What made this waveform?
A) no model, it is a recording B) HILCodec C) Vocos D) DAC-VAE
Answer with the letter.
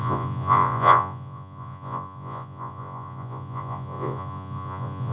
C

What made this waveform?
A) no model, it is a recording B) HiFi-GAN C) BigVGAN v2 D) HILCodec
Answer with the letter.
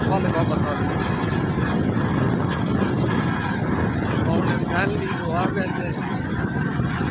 A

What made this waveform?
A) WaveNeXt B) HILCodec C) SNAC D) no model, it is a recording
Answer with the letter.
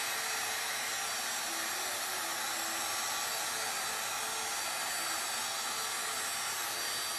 D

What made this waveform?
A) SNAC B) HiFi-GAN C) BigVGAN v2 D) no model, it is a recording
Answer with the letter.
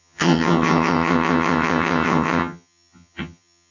B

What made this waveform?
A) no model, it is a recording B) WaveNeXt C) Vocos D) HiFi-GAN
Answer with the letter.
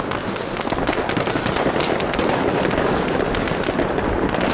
A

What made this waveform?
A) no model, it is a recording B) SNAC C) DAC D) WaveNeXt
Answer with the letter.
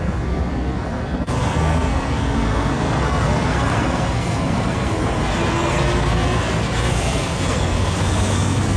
B